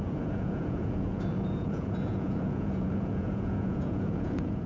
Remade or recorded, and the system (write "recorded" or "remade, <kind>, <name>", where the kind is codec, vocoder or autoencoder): remade, vocoder, Vocos